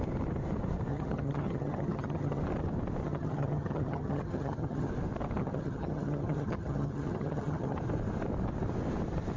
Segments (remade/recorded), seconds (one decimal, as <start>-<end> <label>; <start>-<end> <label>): 0.0-0.9 recorded; 0.9-2.4 remade; 2.4-3.0 recorded; 3.0-4.9 remade; 4.9-5.4 recorded; 5.4-7.8 remade; 7.8-9.4 recorded